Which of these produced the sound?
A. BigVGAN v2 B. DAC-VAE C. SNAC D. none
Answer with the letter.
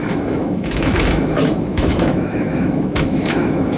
B